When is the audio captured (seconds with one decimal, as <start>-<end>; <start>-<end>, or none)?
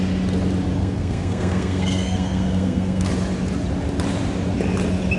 0.0-0.8; 3.1-5.2